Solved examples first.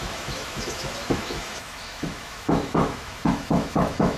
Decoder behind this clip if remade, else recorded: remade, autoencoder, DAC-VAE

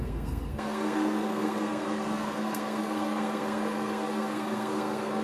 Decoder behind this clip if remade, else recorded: remade, codec, SNAC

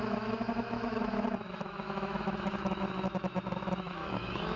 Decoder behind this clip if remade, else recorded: remade, autoencoder, DAC-VAE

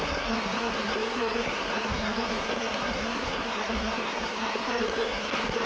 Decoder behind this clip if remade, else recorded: remade, codec, SNAC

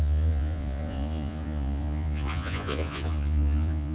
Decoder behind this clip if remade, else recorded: remade, vocoder, Vocos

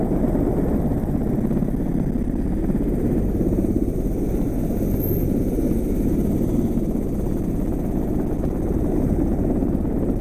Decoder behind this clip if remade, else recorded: recorded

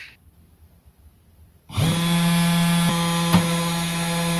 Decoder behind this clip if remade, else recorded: recorded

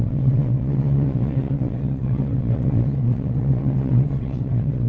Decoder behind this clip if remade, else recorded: remade, vocoder, WaveNeXt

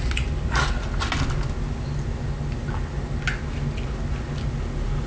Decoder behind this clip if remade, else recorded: recorded